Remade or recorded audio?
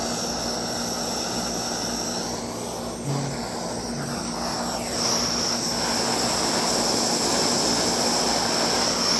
recorded